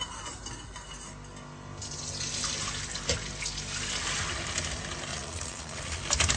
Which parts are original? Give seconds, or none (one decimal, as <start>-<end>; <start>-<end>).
0.0-5.1; 6.0-6.4